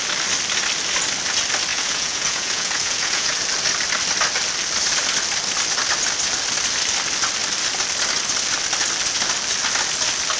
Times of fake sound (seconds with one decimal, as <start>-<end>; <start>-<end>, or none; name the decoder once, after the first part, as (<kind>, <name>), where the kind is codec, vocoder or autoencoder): 1.7-3.3 (vocoder, Vocos)